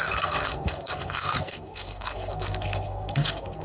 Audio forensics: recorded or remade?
remade